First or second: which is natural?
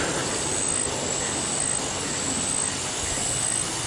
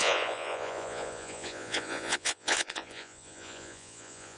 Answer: first